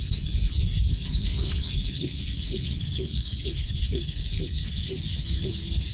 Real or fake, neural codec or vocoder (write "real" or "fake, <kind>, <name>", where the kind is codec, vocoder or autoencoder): fake, codec, SNAC